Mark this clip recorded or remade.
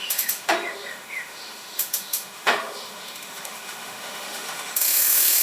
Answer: remade